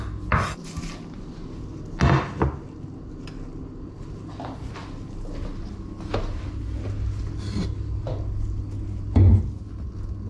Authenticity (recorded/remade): recorded